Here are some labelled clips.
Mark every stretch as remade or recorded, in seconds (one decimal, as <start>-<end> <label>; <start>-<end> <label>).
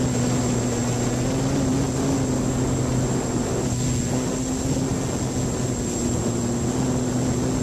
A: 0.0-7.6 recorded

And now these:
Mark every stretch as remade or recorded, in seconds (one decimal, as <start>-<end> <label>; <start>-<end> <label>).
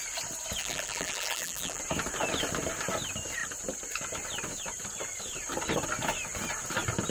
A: 0.0-0.6 recorded; 0.6-1.8 remade; 1.8-7.1 recorded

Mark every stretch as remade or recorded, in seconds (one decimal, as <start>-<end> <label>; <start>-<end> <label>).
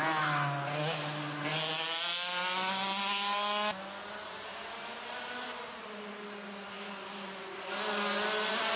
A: 0.0-8.8 recorded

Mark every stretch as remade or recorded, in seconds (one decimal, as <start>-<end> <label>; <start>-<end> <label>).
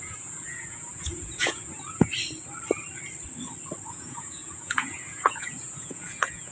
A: 0.0-2.1 remade; 2.1-3.9 recorded; 3.9-6.5 remade